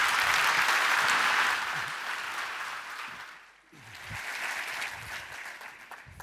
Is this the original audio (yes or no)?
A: yes